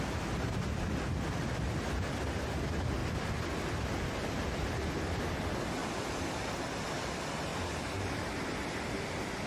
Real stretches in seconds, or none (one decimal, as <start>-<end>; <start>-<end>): 0.0-3.0; 5.2-5.8; 6.7-7.5; 9.0-9.5